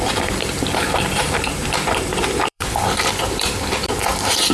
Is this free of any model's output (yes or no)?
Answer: no